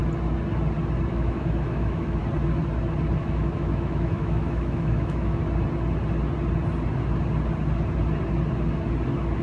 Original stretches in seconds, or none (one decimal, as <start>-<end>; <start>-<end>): 0.0-1.1; 2.2-3.2; 5.4-9.4